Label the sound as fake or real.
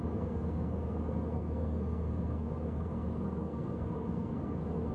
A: fake